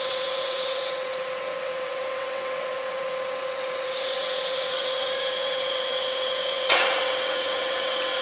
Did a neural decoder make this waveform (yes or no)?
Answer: yes